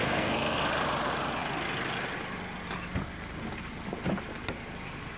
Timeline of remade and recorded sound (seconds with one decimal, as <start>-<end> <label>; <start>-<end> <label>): 0.0-0.6 remade; 0.6-5.2 recorded